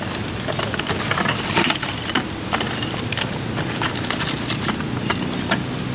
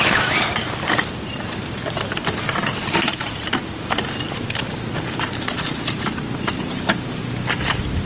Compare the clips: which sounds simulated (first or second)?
second